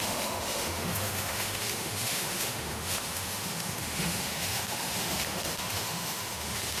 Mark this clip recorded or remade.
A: remade